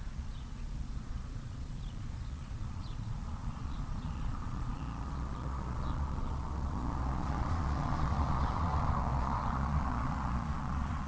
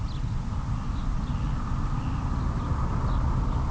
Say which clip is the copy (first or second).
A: first